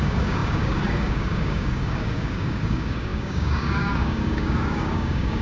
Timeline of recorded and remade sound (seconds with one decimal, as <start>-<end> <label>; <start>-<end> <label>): 0.0-5.4 remade